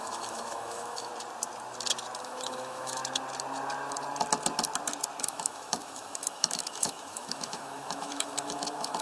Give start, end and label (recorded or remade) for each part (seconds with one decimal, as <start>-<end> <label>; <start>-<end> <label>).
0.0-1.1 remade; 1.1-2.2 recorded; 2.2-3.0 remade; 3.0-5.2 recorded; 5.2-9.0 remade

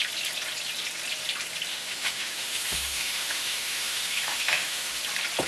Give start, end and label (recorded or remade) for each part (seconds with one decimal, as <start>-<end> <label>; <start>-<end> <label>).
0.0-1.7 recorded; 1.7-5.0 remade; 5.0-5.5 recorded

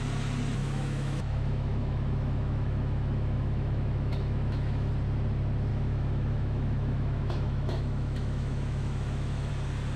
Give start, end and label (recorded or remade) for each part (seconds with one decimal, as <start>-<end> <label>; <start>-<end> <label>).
0.0-0.6 recorded; 0.6-4.9 remade; 4.9-5.7 recorded; 5.7-9.5 remade; 9.5-10.0 recorded

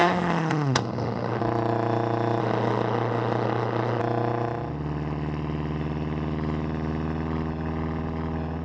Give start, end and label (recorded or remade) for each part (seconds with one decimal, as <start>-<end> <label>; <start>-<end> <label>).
0.0-1.4 remade; 1.4-2.4 recorded; 2.4-4.0 remade; 4.0-8.6 recorded